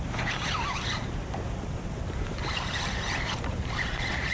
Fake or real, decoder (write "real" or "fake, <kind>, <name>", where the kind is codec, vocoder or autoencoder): fake, vocoder, BigVGAN v2